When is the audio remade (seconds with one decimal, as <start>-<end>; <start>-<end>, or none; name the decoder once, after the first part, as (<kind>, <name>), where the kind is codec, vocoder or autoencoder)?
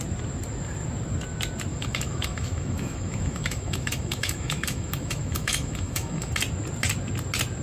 1.7-6.3 (autoencoder, DAC-VAE)